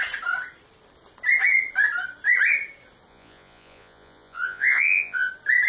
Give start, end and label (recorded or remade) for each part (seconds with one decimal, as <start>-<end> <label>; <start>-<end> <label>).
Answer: 0.0-3.1 recorded; 3.1-5.3 remade; 5.3-5.7 recorded